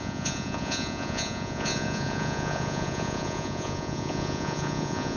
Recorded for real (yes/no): no